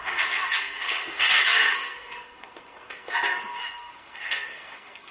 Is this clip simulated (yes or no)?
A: yes